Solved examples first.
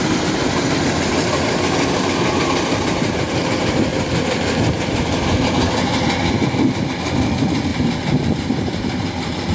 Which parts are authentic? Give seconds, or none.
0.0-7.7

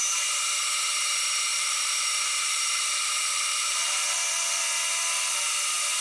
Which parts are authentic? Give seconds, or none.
0.0-1.5; 4.6-6.0

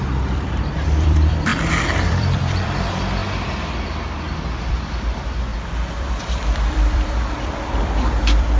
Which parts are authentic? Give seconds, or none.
3.2-4.7